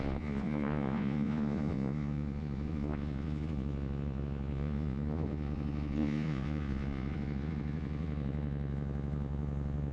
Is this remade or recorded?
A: remade